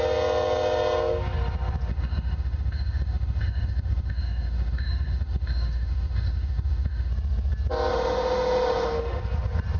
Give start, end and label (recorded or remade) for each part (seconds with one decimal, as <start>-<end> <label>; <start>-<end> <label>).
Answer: 0.0-1.9 recorded; 1.9-7.1 remade; 7.1-7.9 recorded; 7.9-9.2 remade; 9.2-9.8 recorded